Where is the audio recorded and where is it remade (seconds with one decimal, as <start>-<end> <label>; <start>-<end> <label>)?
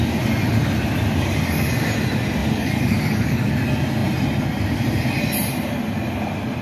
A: 0.0-2.4 recorded; 2.4-3.5 remade; 3.5-6.6 recorded